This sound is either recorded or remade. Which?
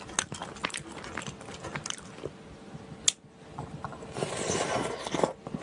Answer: recorded